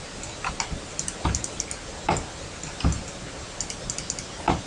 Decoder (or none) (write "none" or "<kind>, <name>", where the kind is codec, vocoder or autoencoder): none